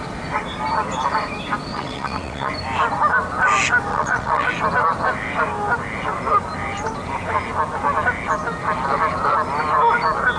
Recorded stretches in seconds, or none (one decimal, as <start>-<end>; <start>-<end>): 0.0-1.7; 2.5-3.9; 4.5-10.4

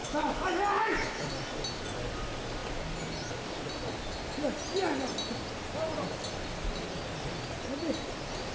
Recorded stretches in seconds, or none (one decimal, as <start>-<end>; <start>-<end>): 1.3-8.5

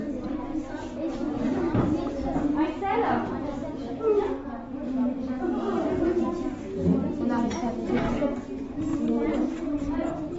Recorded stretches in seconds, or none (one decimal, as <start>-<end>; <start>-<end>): 0.0-1.4; 6.0-8.9

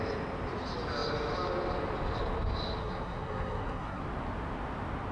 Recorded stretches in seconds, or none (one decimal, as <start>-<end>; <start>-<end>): 0.0-2.8; 4.0-5.1

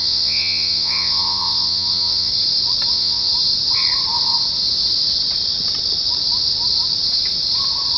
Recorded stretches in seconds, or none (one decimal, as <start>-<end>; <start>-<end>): 2.3-2.9; 3.3-8.0

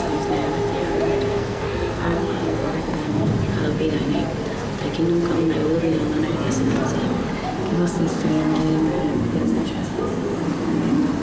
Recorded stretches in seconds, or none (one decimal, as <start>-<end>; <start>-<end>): 0.0-1.3; 3.3-8.1; 8.7-11.2

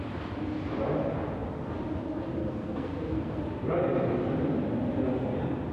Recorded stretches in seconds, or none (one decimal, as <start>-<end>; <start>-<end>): 0.0-2.4; 3.4-5.7